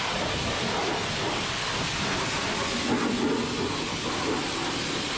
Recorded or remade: recorded